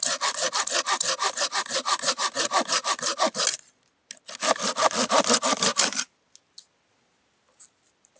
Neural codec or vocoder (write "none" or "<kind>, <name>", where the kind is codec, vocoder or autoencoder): none